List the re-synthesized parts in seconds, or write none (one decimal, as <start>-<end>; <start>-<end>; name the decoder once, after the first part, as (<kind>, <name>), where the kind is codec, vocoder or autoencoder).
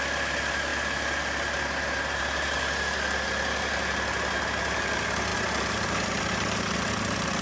none